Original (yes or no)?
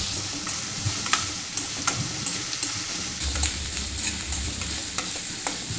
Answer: no